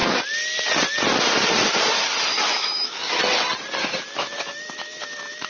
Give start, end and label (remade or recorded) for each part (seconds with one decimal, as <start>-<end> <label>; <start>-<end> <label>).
0.0-2.3 recorded; 2.3-3.2 remade; 3.2-3.8 recorded; 3.8-5.5 remade

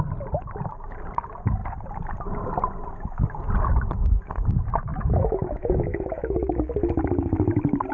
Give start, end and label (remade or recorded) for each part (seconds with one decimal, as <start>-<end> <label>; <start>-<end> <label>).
0.0-4.9 recorded; 4.9-6.7 remade; 6.7-7.9 recorded

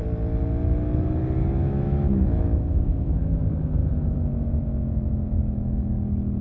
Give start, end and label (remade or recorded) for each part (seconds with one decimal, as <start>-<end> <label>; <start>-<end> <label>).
0.0-1.6 recorded; 1.6-3.4 remade; 3.4-3.8 recorded; 3.8-5.9 remade; 5.9-6.4 recorded